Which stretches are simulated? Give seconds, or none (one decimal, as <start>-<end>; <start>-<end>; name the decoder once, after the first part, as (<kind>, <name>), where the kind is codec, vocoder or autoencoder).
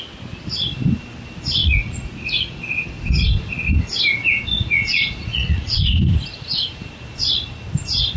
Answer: 1.6-2.6 (vocoder, Vocos); 4.2-5.8